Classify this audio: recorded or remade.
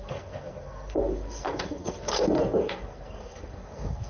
remade